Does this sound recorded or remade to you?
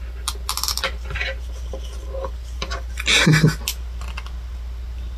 recorded